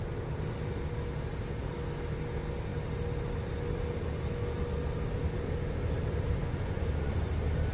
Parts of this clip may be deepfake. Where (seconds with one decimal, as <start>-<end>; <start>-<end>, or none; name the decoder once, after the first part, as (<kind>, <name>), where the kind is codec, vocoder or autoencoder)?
6.3-7.3 (vocoder, Vocos)